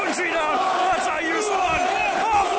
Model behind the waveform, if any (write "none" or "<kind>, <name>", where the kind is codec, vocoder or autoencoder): none